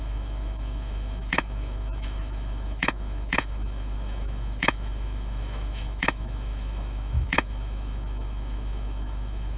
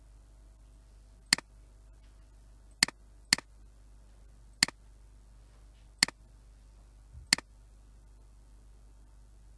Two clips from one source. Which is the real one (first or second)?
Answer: second